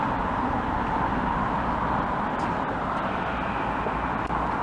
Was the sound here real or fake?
real